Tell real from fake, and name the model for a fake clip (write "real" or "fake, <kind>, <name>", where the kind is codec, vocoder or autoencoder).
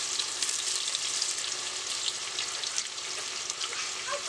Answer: real